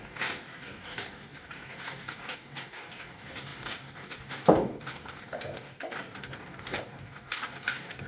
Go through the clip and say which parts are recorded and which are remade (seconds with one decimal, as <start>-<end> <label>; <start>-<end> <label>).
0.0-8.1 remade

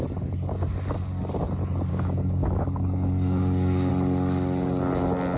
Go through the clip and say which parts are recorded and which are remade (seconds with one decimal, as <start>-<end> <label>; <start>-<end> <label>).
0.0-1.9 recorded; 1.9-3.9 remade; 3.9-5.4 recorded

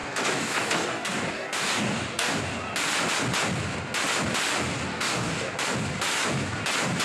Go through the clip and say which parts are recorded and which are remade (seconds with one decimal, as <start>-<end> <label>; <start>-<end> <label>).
0.0-2.4 remade; 2.4-4.9 recorded; 4.9-5.5 remade; 5.5-7.0 recorded

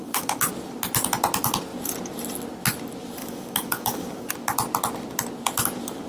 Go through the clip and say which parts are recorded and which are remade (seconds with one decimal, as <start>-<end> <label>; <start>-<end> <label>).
0.0-0.5 remade; 0.5-3.2 recorded; 3.2-4.3 remade; 4.3-6.1 recorded

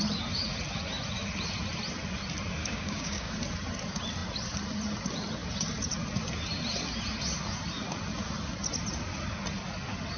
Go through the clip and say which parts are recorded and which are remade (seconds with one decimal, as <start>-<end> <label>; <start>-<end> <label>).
0.0-2.6 recorded; 2.6-3.3 remade; 3.3-10.2 recorded

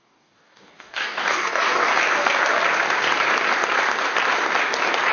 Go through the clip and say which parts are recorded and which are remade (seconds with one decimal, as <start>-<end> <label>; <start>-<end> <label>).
0.0-1.9 remade; 1.9-5.1 recorded